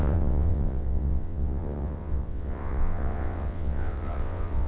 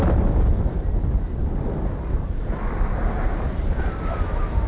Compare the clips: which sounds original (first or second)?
second